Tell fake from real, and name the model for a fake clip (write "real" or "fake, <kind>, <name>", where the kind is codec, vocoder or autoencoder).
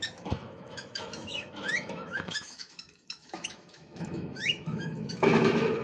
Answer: fake, autoencoder, DAC-VAE